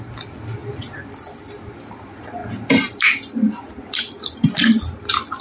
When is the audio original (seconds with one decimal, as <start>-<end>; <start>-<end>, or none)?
0.0-0.6; 1.5-2.4; 4.2-5.4